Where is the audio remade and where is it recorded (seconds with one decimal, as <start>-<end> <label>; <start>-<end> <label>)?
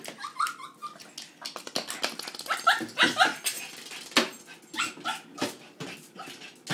0.0-6.7 recorded